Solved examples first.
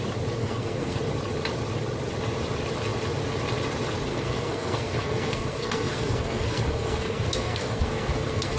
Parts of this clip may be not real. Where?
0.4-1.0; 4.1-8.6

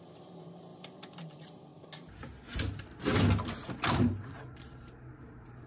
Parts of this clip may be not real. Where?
0.0-0.7; 1.2-1.7; 3.9-5.7

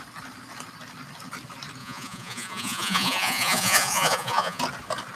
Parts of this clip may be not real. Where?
1.8-4.6

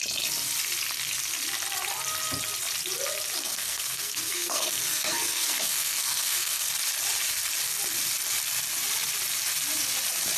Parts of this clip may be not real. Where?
3.4-6.7

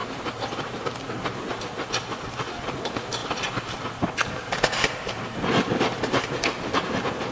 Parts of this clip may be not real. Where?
3.2-3.8